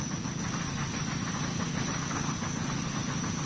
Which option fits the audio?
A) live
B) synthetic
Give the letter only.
A